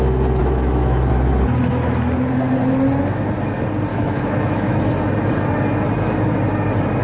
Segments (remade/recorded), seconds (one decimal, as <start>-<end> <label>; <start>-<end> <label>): 0.0-0.4 recorded; 0.4-1.1 remade; 1.1-3.9 recorded; 3.9-4.8 remade; 4.8-7.0 recorded